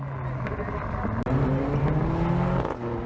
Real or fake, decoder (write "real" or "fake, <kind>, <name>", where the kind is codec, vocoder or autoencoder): real